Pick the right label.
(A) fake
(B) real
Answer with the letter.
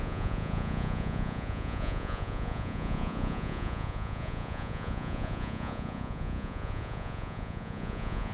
A